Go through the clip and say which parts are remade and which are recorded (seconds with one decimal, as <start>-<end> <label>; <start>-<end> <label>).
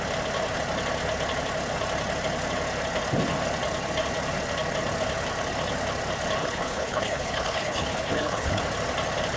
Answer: 0.0-6.4 recorded; 6.4-8.6 remade; 8.6-9.4 recorded